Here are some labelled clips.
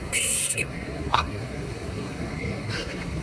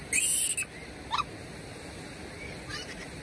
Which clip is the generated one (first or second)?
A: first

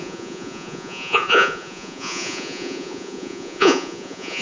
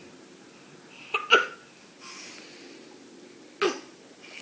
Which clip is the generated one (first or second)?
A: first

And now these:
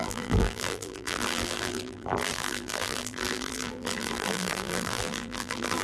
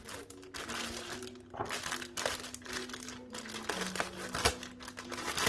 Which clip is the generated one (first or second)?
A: first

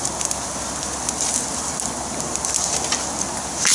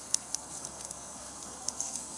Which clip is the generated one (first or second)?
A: second